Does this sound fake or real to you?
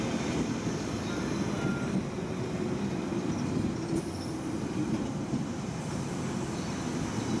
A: real